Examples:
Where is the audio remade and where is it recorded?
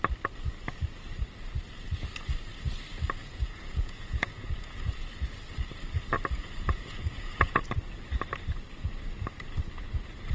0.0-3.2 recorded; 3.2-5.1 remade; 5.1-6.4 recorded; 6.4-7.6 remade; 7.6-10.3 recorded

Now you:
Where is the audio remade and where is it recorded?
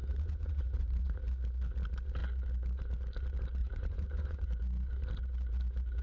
0.0-1.2 remade; 1.2-3.6 recorded; 3.6-4.5 remade; 4.5-6.0 recorded